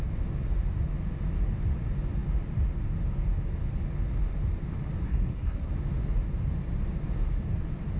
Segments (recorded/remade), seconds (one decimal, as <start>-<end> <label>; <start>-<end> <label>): 0.0-5.0 recorded; 5.0-5.7 remade; 5.7-8.0 recorded

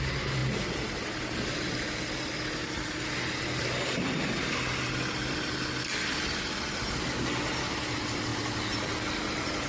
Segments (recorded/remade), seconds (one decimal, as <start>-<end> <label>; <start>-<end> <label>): 0.0-9.7 recorded